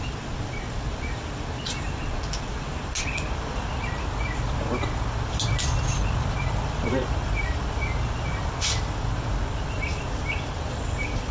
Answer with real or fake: real